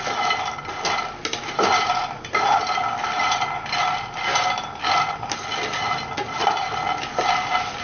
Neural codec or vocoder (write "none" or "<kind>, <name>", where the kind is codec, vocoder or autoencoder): none